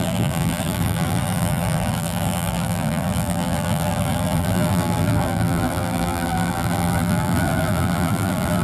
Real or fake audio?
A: fake